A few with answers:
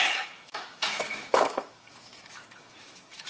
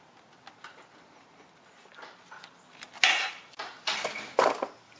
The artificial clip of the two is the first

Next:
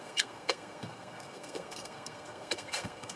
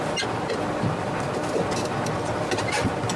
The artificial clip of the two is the first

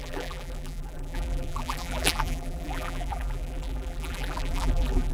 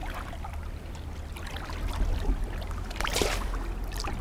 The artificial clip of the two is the first